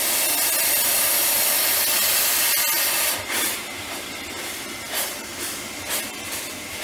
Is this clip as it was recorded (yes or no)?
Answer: yes